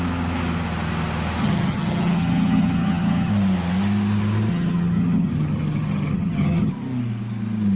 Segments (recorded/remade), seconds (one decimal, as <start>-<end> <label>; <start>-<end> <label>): 0.0-1.4 recorded; 1.4-3.3 remade; 3.3-4.5 recorded; 4.5-6.7 remade; 6.7-7.8 recorded